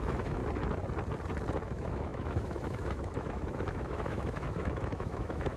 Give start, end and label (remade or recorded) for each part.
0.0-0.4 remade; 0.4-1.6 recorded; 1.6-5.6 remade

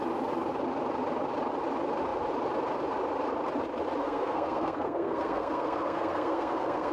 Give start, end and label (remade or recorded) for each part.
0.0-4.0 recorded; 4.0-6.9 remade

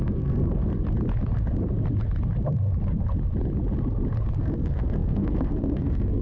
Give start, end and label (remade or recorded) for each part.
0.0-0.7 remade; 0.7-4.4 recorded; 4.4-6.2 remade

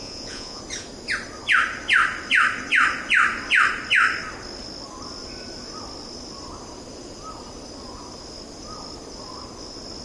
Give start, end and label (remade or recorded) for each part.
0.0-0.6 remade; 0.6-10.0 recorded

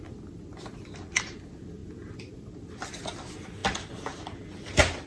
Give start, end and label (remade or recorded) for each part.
0.0-5.1 recorded

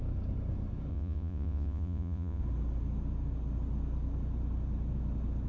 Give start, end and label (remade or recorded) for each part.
0.0-0.9 recorded; 0.9-2.4 remade; 2.4-5.5 recorded

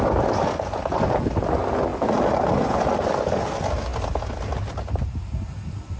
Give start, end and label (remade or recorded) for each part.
0.0-6.0 recorded